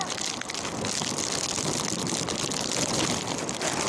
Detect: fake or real real